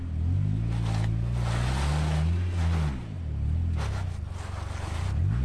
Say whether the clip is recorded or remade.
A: recorded